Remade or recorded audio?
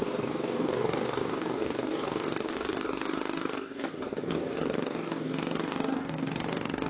remade